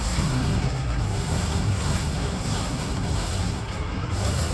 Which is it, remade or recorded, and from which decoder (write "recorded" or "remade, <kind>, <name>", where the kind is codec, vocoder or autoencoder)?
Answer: remade, codec, SNAC